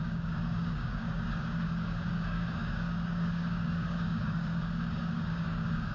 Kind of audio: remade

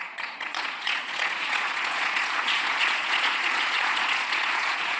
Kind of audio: remade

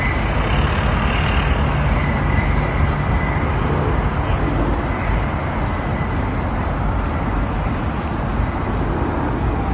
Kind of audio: recorded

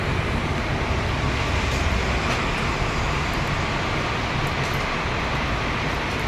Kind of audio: recorded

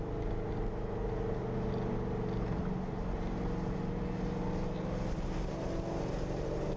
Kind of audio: recorded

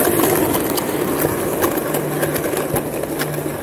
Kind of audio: recorded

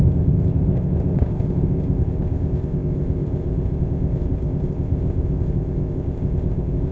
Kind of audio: remade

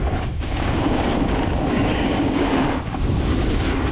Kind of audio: remade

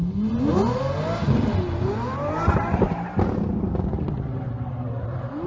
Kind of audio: recorded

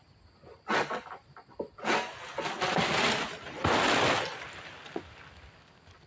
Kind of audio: recorded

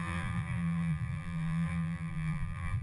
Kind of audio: remade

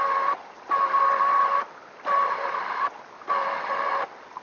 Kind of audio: remade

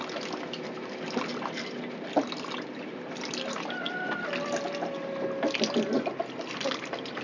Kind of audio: recorded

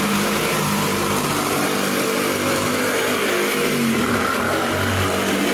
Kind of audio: recorded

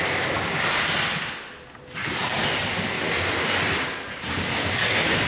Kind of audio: recorded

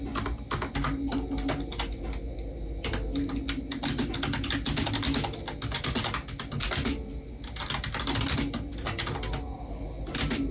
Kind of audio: recorded